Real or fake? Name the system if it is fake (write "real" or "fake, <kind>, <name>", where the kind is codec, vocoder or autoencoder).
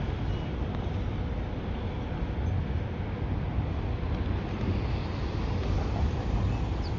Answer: real